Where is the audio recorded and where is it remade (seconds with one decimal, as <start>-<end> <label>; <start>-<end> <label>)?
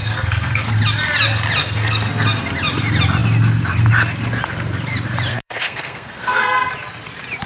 0.0-0.7 remade; 0.7-1.6 recorded; 1.6-2.1 remade; 2.1-5.3 recorded; 5.3-6.7 remade; 6.7-7.5 recorded